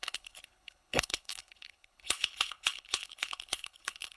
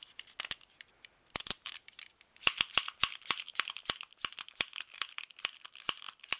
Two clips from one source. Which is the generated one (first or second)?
first